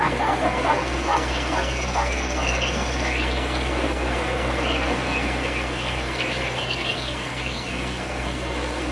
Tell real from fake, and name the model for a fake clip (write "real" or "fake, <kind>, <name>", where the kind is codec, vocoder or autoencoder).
fake, codec, SNAC